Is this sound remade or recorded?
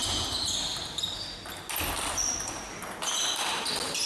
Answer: recorded